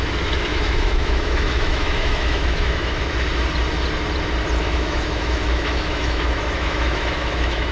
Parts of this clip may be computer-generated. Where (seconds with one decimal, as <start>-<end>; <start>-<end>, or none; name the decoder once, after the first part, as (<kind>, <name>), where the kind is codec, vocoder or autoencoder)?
0.5-3.1 (autoencoder, DAC-VAE); 4.6-7.7